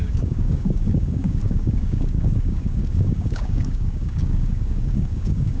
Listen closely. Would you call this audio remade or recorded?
remade